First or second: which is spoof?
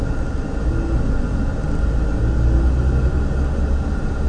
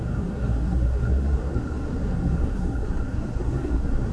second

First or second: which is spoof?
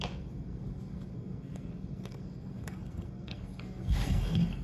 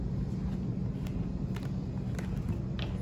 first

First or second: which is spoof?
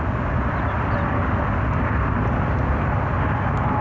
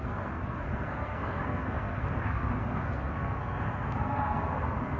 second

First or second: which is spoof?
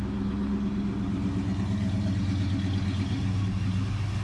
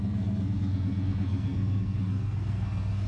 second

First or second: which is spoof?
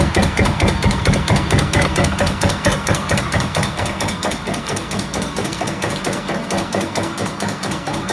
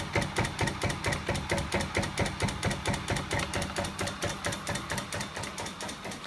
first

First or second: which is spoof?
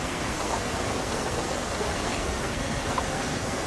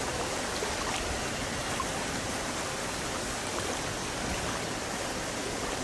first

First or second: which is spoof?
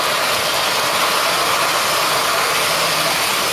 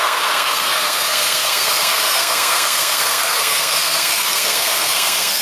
second